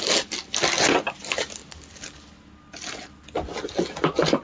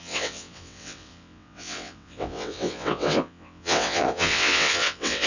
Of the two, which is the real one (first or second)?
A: first